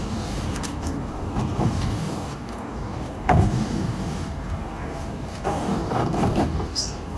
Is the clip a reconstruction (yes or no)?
yes